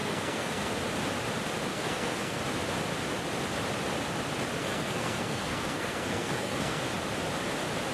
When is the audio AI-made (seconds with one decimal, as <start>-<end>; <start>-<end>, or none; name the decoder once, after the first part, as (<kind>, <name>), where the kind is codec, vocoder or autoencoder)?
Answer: 0.0-0.7 (codec, SNAC); 1.7-2.4; 4.6-6.8